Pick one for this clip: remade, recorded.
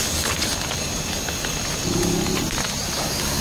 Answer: recorded